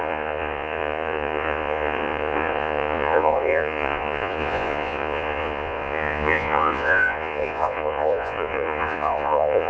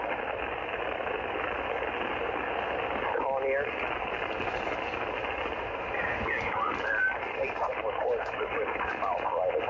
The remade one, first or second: first